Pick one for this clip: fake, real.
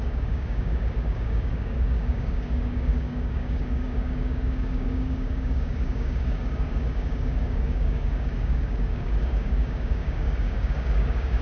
fake